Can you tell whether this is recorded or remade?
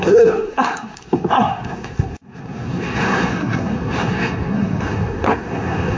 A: remade